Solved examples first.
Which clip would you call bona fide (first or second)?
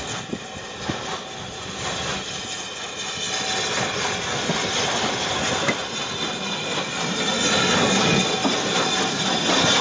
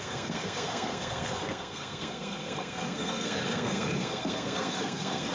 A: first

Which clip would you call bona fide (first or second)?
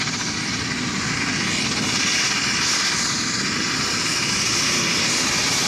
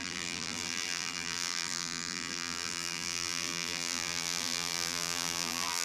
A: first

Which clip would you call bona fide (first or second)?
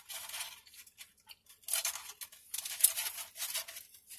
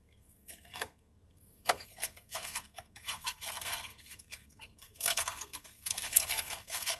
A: first